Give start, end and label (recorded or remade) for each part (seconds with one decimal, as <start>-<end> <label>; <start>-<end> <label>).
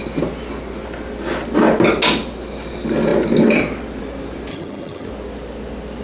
0.0-4.5 recorded; 4.5-5.1 remade; 5.1-6.0 recorded